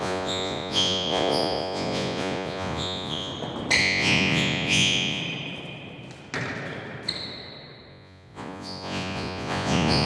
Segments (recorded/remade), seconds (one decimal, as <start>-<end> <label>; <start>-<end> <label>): 0.0-3.3 remade; 3.3-3.8 recorded; 3.8-5.2 remade; 5.2-7.9 recorded; 7.9-10.1 remade